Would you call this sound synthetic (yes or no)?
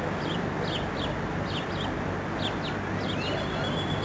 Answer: no